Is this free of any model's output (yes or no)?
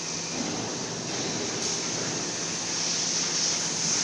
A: yes